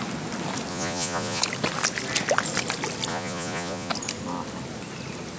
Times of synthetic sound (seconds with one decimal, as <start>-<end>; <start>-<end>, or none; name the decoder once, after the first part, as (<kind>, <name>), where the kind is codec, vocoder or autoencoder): 0.7-1.4 (vocoder, Vocos); 3.1-3.9